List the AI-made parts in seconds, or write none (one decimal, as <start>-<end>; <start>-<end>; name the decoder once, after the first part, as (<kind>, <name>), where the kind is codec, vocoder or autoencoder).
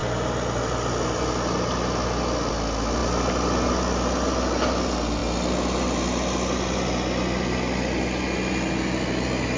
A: none